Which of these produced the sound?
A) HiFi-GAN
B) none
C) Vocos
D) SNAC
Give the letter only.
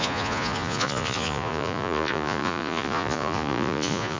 C